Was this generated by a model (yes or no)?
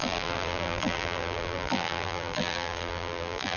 yes